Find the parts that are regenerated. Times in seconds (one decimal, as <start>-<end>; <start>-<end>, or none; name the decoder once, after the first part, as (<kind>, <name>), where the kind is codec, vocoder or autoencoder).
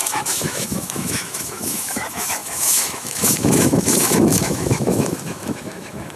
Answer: 0.0-6.2 (autoencoder, DAC-VAE)